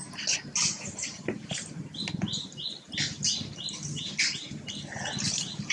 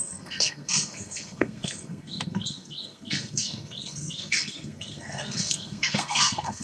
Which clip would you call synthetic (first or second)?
second